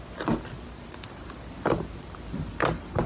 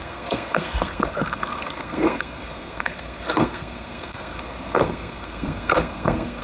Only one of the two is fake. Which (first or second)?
second